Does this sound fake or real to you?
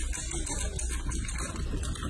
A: real